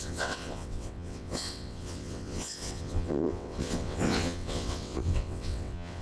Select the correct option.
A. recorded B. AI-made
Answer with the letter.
B